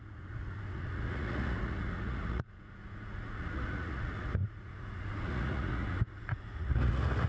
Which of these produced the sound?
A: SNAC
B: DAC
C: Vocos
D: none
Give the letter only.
C